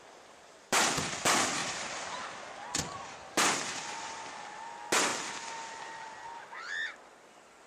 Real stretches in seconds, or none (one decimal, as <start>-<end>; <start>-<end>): 0.0-7.7